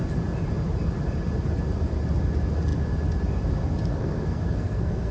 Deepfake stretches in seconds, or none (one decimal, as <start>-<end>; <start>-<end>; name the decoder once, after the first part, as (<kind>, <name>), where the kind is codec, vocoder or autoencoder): 3.9-5.1 (codec, SNAC)